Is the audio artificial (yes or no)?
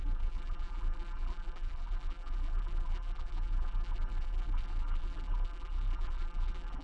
yes